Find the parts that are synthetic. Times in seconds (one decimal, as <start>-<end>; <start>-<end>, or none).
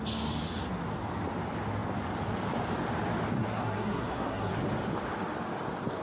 3.4-4.5